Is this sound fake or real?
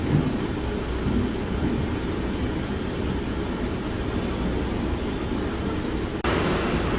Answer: real